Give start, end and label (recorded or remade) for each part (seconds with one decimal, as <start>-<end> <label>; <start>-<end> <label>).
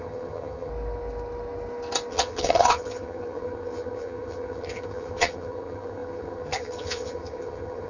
0.0-0.7 remade; 0.7-2.1 recorded; 2.1-7.9 remade